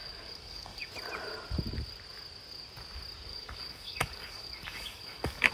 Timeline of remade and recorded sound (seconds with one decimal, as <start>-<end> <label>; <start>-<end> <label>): 0.0-0.9 remade; 0.9-3.3 recorded; 3.3-5.5 remade